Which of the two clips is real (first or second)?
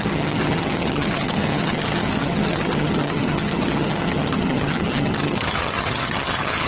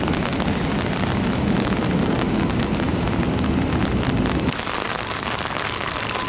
second